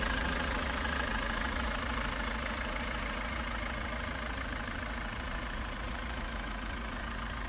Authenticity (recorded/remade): remade